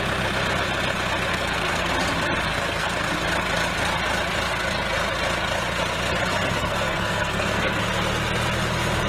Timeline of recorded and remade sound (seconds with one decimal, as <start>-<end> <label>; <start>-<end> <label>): 0.0-1.3 recorded; 1.3-1.9 remade; 1.9-2.5 recorded; 2.5-3.1 remade; 3.1-6.6 recorded; 6.6-7.8 remade; 7.8-9.1 recorded